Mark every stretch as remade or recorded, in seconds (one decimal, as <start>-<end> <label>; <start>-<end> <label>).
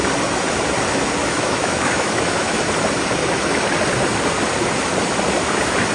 0.0-1.2 recorded; 1.2-2.6 remade; 2.6-5.9 recorded